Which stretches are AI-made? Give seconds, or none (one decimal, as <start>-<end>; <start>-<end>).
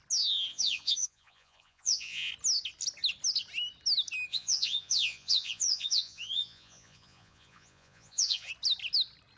0.5-2.3; 4.3-8.5